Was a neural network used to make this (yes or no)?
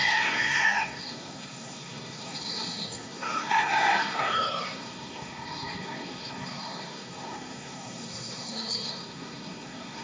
yes